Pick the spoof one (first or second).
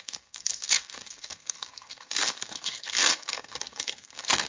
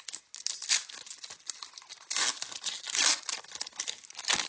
first